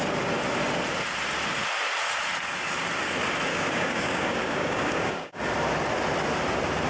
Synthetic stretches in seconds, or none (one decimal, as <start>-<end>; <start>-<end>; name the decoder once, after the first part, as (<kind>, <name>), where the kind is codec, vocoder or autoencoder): 3.5-5.4 (codec, DAC)